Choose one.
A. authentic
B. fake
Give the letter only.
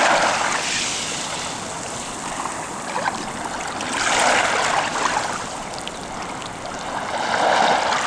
A